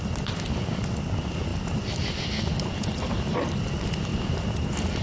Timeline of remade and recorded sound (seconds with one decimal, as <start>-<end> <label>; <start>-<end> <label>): 0.0-5.0 recorded